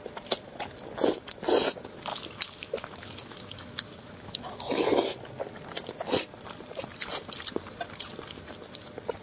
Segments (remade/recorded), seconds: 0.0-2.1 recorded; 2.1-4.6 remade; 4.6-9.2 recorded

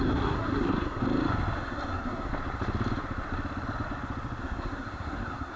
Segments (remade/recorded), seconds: 0.0-1.0 remade; 1.0-1.6 recorded; 1.6-2.3 remade; 2.3-4.4 recorded; 4.4-5.6 remade

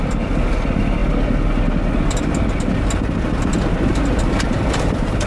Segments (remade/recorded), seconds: 0.0-1.0 remade; 1.0-4.2 recorded; 4.2-5.3 remade

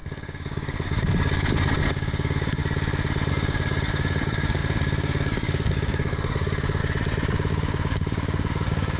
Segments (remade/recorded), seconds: 0.0-2.6 remade; 2.6-3.3 recorded; 3.3-6.8 remade; 6.8-7.5 recorded; 7.5-9.0 remade